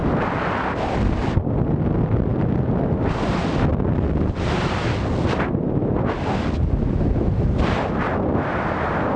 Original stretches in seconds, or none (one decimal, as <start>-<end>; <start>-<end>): 0.0-9.2